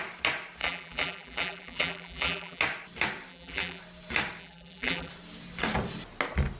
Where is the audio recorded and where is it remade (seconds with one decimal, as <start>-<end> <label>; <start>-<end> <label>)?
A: 0.0-0.6 recorded; 0.6-2.6 remade; 2.6-3.3 recorded; 3.3-3.8 remade; 3.8-4.4 recorded; 4.4-5.1 remade; 5.1-6.6 recorded